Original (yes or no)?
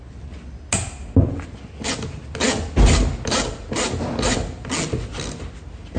yes